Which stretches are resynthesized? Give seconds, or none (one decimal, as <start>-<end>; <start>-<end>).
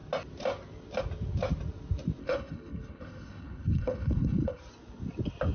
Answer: 2.2-4.6